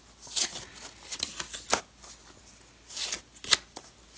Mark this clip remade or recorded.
recorded